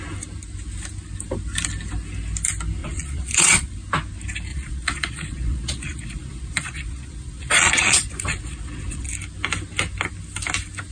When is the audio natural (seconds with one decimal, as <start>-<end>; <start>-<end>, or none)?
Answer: 0.0-2.8; 3.8-4.5; 9.1-10.9